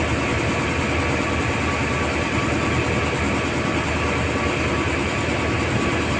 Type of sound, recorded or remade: recorded